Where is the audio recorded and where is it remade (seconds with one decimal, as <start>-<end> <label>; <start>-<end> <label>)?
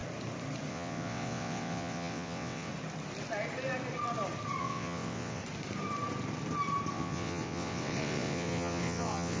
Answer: 0.0-0.7 recorded; 0.7-2.7 remade; 2.7-4.6 recorded; 4.6-5.4 remade; 5.4-6.9 recorded; 6.9-9.4 remade